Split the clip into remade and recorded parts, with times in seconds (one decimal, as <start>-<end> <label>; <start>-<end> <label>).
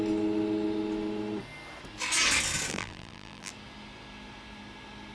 0.0-2.7 recorded; 2.7-3.5 remade; 3.5-5.1 recorded